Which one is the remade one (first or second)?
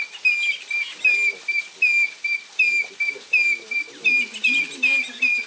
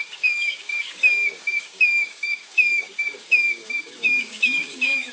second